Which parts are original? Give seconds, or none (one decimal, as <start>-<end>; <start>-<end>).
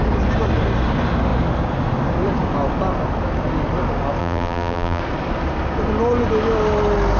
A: 0.0-4.2; 5.0-7.2